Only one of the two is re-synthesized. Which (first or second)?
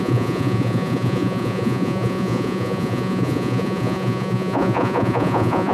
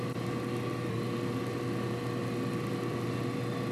first